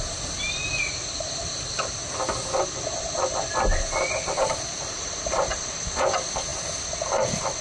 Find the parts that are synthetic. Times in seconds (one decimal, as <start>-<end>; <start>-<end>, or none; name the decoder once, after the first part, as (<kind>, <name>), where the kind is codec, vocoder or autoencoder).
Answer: none